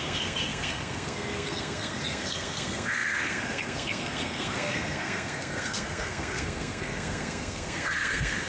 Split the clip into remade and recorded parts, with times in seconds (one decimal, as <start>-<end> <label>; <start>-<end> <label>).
0.0-8.5 remade